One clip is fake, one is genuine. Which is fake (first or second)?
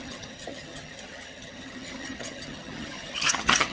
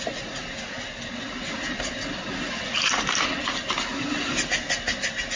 first